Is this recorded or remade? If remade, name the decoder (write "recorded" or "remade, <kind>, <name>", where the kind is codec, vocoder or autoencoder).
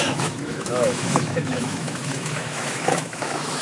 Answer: remade, autoencoder, DAC-VAE